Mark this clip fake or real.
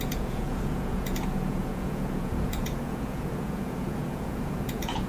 fake